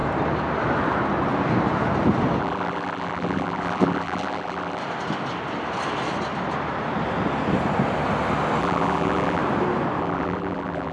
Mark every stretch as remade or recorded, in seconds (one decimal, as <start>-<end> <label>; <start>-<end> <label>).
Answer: 0.0-2.4 recorded; 2.4-4.8 remade; 4.8-8.6 recorded; 8.6-9.4 remade; 9.4-10.0 recorded; 10.0-10.9 remade